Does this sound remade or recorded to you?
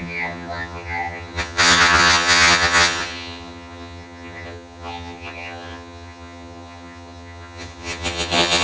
remade